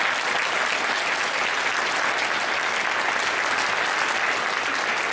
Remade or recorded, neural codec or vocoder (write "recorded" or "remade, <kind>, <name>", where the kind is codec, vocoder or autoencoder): recorded